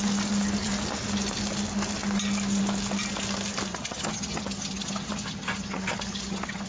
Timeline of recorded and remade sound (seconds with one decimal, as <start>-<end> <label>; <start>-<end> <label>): 0.0-3.7 recorded; 3.7-6.7 remade